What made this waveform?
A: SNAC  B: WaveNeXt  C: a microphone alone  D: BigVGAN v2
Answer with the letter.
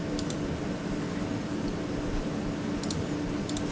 C